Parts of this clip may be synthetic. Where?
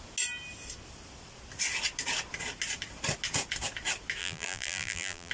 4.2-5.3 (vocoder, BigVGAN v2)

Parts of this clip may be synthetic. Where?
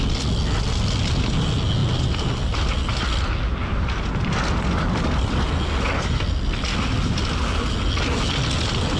none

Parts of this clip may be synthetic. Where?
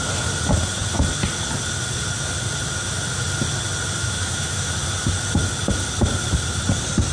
4.0-4.7 (autoencoder, DAC-VAE)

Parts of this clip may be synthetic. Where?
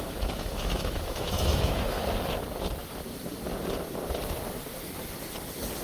0.0-2.0 (autoencoder, DAC-VAE)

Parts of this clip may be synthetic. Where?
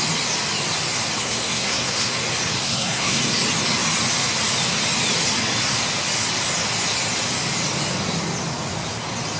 1.2-2.1 (codec, SNAC); 2.6-3.2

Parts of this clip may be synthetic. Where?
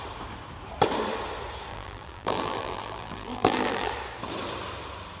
1.7-3.9 (vocoder, BigVGAN v2)